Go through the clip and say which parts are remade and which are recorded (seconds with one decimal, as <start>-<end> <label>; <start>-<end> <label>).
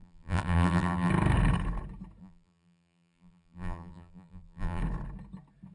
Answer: 0.0-1.1 remade; 1.1-2.2 recorded; 2.2-4.8 remade; 4.8-5.7 recorded